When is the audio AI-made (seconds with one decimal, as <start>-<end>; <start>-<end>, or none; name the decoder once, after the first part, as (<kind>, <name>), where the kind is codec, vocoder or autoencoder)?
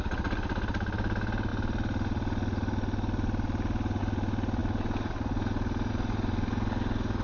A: none